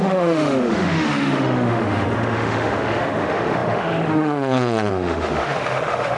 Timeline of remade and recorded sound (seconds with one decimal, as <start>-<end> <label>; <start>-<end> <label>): 0.0-6.2 remade

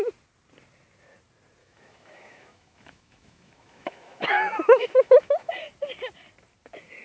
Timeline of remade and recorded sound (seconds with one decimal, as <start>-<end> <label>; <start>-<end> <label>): 0.0-1.6 recorded; 1.6-5.5 remade; 5.5-7.0 recorded